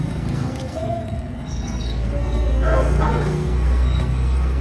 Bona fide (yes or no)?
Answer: no